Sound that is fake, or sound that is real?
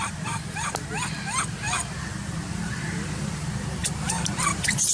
fake